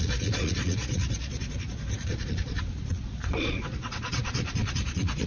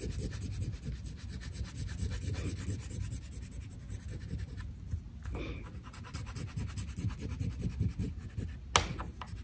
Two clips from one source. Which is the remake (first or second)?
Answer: first